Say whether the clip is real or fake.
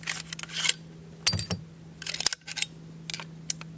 real